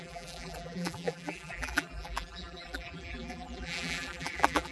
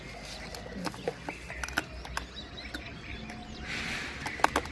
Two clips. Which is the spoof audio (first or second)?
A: first